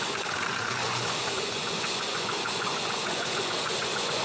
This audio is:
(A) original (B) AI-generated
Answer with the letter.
B